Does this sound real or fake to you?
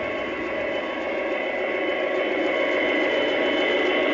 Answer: real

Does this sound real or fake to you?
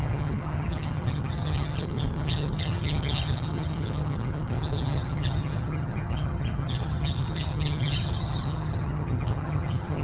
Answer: fake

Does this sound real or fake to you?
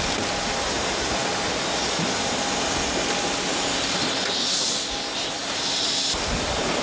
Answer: real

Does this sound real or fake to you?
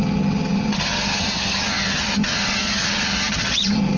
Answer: fake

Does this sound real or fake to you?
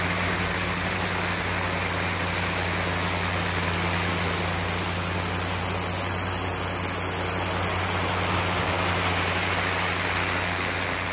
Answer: real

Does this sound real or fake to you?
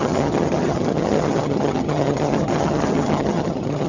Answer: fake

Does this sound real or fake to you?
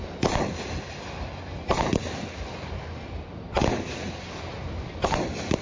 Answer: real